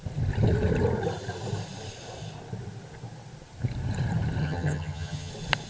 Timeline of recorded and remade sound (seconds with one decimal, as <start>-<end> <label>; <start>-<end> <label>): 0.0-4.4 recorded; 4.4-5.3 remade; 5.3-5.7 recorded